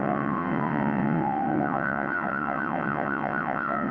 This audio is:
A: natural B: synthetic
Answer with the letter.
B